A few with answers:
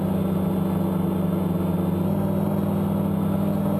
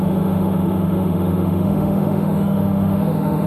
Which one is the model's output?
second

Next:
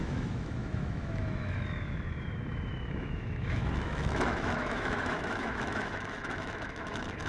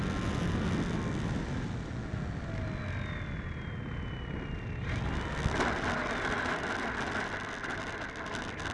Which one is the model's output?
first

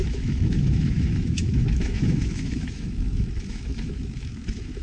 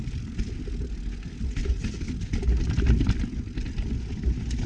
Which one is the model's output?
first